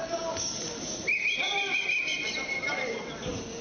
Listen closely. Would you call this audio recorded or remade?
recorded